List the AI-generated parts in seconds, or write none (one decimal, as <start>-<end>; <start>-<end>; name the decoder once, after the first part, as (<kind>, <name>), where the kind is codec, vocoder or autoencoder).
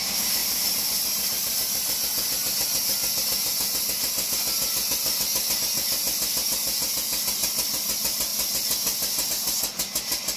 none